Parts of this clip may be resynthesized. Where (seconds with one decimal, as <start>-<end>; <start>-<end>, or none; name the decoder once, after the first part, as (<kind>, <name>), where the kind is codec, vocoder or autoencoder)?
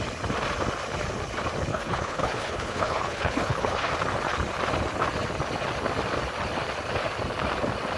1.7-3.9 (codec, HILCodec)